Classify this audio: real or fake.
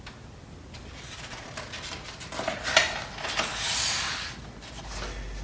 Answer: real